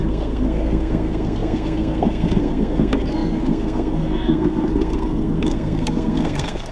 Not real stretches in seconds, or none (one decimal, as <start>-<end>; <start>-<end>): 0.0-6.7

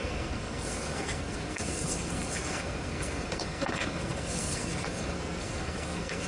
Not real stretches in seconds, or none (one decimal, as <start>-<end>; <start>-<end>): 0.0-6.3